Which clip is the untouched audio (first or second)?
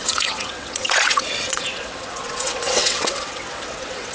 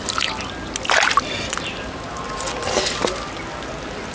second